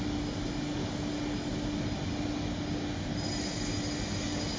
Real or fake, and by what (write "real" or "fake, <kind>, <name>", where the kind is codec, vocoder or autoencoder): real